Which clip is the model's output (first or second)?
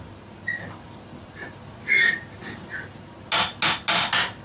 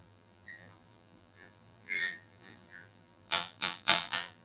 second